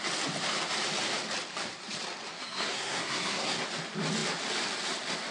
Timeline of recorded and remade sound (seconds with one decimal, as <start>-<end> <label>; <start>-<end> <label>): 0.0-2.4 recorded; 2.4-3.6 remade; 3.6-5.3 recorded